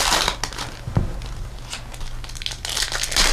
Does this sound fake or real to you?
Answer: real